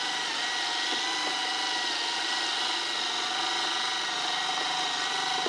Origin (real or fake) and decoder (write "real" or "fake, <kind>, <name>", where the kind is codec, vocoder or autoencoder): real